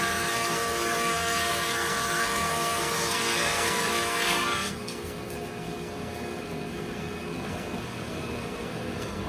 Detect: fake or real fake